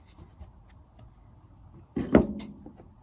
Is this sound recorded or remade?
recorded